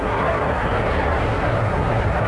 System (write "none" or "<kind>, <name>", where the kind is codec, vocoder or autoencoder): codec, SNAC